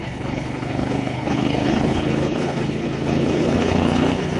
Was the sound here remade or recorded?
remade